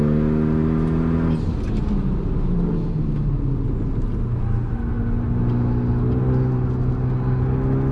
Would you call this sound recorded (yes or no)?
yes